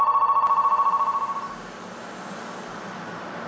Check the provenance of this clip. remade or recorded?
recorded